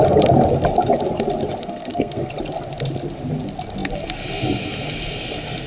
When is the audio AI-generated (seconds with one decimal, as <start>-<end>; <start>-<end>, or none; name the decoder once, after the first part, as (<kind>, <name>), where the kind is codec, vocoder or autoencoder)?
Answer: 1.6-2.3 (codec, SNAC)